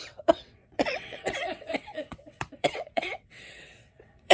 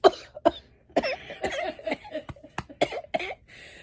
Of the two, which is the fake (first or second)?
first